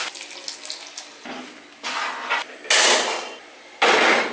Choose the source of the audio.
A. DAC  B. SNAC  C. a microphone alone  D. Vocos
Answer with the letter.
C